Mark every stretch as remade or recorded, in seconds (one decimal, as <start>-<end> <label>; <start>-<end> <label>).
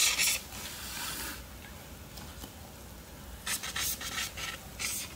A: 0.0-5.2 recorded